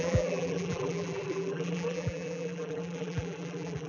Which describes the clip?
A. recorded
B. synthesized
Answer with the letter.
B